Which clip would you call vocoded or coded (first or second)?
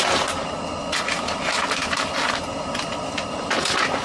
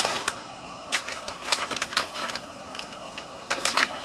second